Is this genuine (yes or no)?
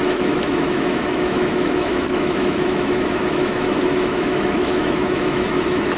no